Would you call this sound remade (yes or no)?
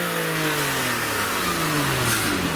no